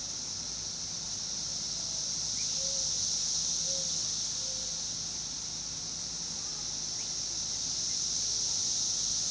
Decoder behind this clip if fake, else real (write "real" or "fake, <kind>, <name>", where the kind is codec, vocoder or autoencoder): real